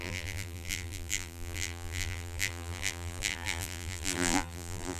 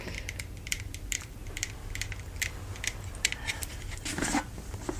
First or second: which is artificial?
first